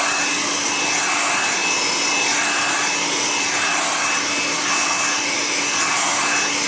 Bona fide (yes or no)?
yes